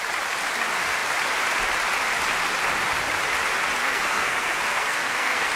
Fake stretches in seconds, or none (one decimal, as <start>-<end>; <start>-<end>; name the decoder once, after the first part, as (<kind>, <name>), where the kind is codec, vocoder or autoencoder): 3.8-5.6 (codec, SNAC)